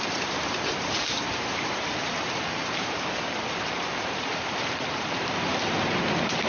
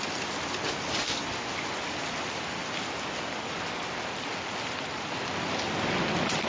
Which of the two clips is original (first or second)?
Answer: second